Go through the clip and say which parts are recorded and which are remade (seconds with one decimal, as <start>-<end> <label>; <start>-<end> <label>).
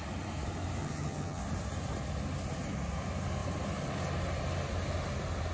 0.0-0.8 recorded; 0.8-1.4 remade; 1.4-5.5 recorded